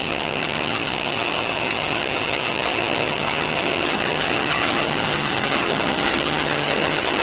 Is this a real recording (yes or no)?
no